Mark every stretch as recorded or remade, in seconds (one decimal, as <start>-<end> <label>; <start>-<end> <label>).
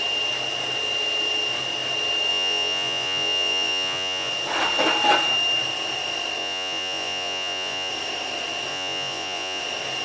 0.0-2.3 recorded; 2.3-4.3 remade; 4.3-6.4 recorded; 6.4-7.9 remade; 7.9-8.7 recorded; 8.7-9.6 remade; 9.6-10.0 recorded